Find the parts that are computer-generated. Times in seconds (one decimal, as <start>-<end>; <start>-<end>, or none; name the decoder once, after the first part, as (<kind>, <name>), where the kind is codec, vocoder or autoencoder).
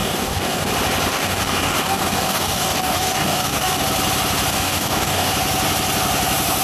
0.0-0.7 (codec, DAC); 1.1-3.8; 4.5-5.3